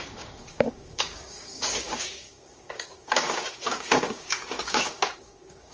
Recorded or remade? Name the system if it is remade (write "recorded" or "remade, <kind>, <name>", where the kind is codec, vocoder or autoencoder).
remade, codec, DAC